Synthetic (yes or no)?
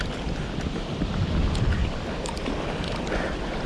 yes